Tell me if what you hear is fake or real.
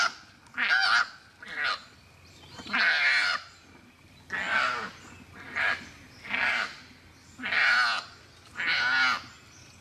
real